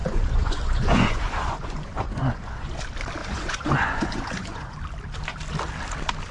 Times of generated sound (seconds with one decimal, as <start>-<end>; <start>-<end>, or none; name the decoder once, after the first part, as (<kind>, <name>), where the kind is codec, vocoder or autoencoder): 0.0-2.7 (vocoder, Vocos); 3.2-4.8